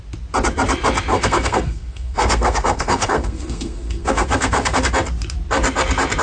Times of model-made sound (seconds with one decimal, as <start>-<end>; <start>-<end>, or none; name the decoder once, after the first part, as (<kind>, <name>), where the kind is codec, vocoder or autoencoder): 1.1-4.8 (codec, SNAC)